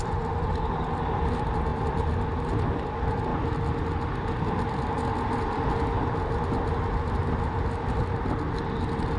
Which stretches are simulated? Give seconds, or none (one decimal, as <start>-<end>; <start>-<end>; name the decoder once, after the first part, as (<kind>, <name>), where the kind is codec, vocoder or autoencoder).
1.7-2.4 (vocoder, BigVGAN v2)